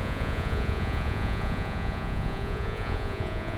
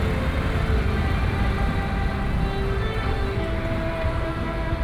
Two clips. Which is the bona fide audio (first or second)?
second